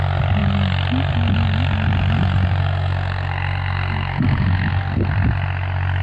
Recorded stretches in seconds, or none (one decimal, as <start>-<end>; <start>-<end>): 0.0-2.6; 5.1-6.0